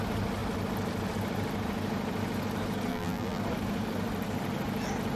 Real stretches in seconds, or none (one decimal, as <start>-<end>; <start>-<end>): 0.0-2.9; 3.4-5.2